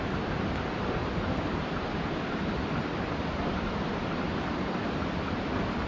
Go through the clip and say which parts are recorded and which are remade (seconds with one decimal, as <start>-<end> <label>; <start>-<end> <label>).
0.0-1.0 remade; 1.0-1.6 recorded; 1.6-5.9 remade